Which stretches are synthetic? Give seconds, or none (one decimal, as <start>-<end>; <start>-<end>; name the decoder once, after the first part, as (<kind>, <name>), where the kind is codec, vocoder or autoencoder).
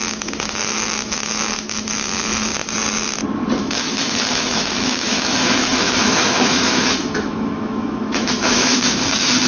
0.0-2.5 (autoencoder, DAC-VAE); 3.6-9.5